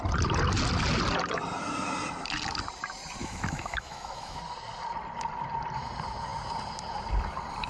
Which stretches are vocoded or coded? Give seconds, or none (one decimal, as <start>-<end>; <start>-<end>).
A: 3.2-4.4